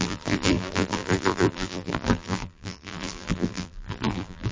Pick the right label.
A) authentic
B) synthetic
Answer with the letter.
B